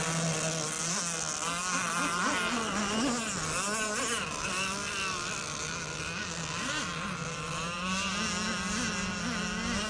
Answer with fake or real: real